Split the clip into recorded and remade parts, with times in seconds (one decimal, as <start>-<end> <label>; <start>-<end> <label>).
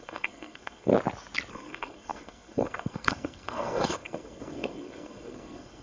0.0-0.9 remade; 0.9-1.5 recorded; 1.5-5.8 remade